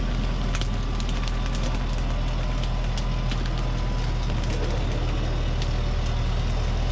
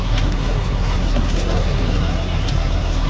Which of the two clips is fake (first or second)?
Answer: second